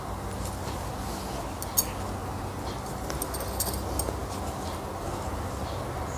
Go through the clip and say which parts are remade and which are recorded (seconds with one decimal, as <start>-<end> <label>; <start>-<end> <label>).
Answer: 0.0-6.2 recorded